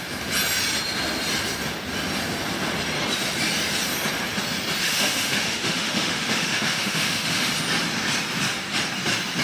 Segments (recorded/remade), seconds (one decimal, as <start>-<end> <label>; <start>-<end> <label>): 0.0-4.8 recorded; 4.8-7.5 remade; 7.5-9.4 recorded